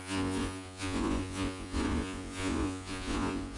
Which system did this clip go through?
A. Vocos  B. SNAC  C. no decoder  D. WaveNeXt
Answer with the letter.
A